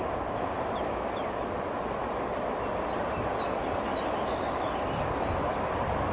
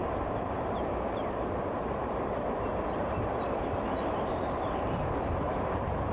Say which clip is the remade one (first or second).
second